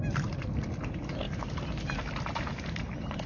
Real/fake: real